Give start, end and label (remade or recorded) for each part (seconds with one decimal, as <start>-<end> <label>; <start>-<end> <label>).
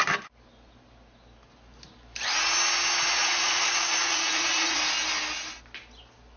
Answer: 0.0-3.2 recorded; 3.2-4.8 remade; 4.8-6.4 recorded